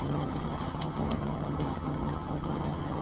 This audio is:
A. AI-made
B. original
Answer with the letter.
A